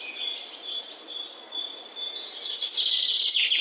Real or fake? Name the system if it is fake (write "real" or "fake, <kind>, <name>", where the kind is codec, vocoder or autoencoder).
real